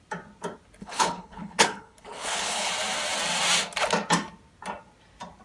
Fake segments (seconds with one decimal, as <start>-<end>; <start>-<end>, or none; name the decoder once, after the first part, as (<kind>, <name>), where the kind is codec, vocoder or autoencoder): 0.8-2.7 (codec, HILCodec)